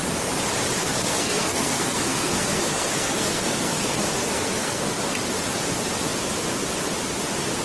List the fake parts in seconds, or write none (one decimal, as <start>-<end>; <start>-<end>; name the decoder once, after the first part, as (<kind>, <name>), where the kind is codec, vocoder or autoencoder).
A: 0.8-5.0 (codec, SNAC)